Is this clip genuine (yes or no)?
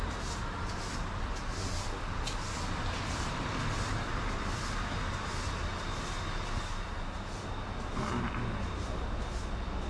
yes